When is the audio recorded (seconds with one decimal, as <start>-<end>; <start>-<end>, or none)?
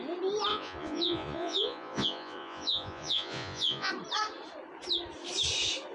0.0-0.5; 3.9-5.9